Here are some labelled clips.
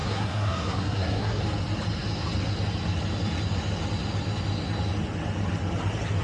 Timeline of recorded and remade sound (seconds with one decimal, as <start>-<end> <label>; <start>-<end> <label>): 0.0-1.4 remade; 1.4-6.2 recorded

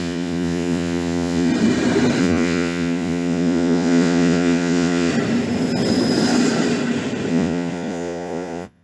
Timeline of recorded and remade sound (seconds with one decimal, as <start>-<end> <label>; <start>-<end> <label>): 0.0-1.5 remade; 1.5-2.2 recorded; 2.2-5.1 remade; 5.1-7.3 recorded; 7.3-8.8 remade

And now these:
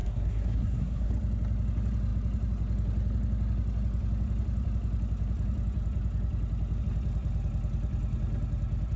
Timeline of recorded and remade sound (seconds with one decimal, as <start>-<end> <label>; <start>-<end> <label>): 0.0-1.1 remade; 1.1-9.0 recorded